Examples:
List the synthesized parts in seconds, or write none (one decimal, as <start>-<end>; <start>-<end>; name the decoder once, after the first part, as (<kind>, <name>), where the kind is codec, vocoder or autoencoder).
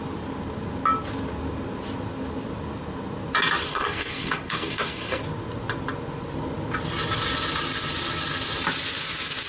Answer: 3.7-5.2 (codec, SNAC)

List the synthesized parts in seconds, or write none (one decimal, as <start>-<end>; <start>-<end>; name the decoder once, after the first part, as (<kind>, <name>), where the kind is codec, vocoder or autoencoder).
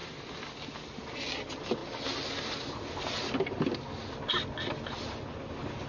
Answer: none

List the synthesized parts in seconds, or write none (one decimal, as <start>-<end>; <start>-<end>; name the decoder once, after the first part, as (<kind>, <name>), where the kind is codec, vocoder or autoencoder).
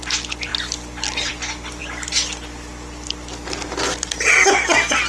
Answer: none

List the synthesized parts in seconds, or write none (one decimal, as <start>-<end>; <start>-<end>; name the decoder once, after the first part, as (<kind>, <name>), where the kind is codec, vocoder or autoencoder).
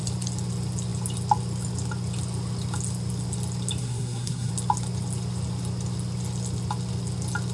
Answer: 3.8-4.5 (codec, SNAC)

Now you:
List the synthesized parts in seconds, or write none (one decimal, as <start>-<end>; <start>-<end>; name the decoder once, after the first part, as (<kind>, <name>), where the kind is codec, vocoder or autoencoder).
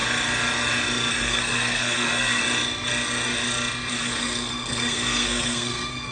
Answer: 1.1-2.4 (codec, SNAC); 3.9-6.1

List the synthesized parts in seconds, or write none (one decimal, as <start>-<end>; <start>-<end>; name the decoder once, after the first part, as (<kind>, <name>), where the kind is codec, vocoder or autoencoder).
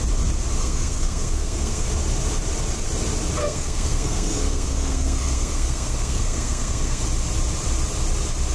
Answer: 0.6-1.9 (codec, SNAC); 3.4-7.0